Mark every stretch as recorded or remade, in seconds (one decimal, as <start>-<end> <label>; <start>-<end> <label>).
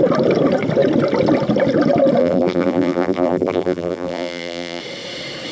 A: 0.0-2.2 recorded; 2.2-4.8 remade; 4.8-5.5 recorded